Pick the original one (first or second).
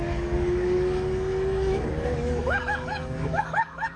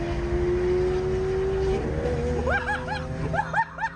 second